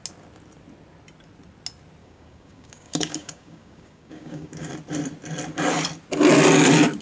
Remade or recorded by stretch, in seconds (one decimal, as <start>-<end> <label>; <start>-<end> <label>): 0.0-2.0 recorded; 2.0-4.7 remade; 4.7-7.0 recorded